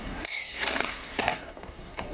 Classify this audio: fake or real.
fake